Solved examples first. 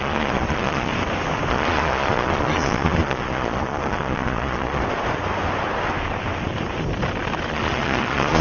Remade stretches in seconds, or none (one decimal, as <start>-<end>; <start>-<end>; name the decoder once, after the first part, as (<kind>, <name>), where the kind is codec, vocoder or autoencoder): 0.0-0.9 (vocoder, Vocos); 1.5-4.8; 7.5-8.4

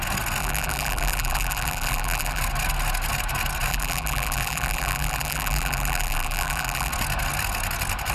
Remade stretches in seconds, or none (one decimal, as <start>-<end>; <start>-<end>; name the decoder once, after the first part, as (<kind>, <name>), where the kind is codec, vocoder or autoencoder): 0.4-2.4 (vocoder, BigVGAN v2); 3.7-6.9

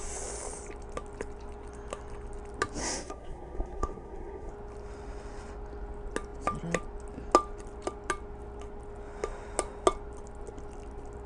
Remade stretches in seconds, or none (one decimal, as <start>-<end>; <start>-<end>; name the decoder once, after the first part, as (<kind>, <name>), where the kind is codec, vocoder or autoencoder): 2.8-4.5 (codec, SNAC)